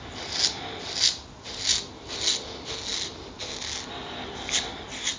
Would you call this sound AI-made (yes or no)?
no